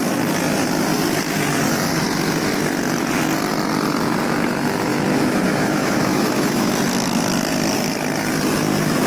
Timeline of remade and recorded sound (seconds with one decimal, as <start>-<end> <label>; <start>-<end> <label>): 0.0-4.9 recorded; 4.9-6.7 remade; 6.7-9.1 recorded